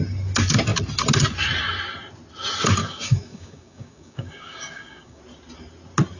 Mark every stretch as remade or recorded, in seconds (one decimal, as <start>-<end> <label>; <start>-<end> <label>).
0.0-2.8 recorded; 2.8-5.2 remade; 5.2-6.2 recorded